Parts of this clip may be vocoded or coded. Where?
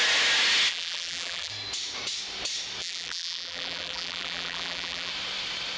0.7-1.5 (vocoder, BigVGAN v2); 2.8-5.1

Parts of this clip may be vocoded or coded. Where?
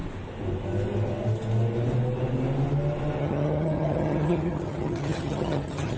3.2-6.0 (vocoder, HiFi-GAN)